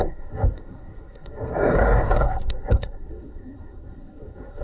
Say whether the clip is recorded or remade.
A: remade